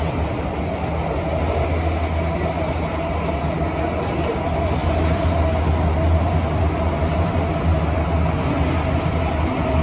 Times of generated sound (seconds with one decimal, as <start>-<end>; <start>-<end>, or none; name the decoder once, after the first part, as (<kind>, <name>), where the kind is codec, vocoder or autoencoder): none